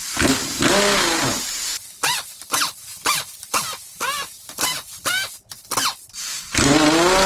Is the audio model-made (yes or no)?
no